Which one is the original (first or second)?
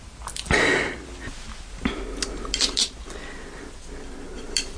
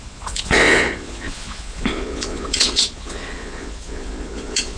first